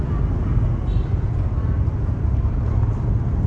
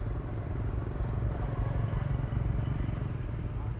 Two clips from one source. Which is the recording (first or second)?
first